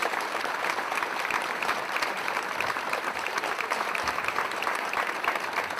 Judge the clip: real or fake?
fake